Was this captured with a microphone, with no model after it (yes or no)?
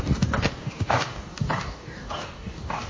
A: no